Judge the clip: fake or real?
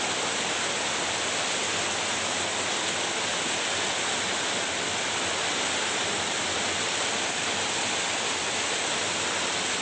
real